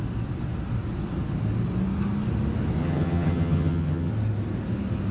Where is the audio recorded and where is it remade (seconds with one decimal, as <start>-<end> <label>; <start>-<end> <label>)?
0.0-2.8 recorded; 2.8-4.1 remade; 4.1-5.1 recorded